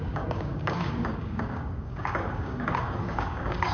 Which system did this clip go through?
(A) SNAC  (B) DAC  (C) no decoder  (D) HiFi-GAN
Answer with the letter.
B